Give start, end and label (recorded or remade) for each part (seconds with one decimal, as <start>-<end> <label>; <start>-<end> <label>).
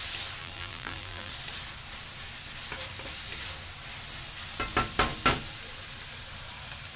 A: 0.0-0.4 recorded; 0.4-1.3 remade; 1.3-7.0 recorded